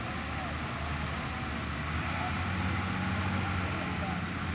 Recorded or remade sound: recorded